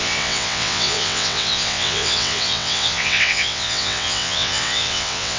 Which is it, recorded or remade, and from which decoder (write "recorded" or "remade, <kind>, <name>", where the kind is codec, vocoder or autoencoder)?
remade, vocoder, WaveNeXt